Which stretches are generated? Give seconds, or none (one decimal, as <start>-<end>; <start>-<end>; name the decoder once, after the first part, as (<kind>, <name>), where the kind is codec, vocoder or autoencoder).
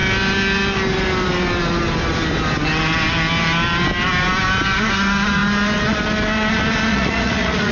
6.9-7.7 (vocoder, Vocos)